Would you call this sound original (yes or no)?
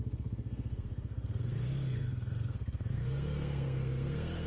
no